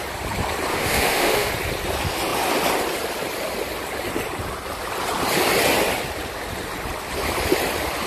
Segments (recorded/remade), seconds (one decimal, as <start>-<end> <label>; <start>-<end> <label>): 0.0-0.7 recorded; 0.7-1.5 remade; 1.5-8.1 recorded